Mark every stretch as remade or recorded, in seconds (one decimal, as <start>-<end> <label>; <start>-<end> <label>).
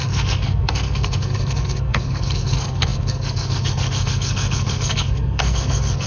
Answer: 0.0-6.1 remade